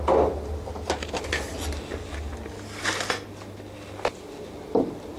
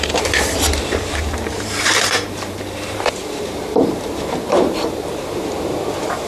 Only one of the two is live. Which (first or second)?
first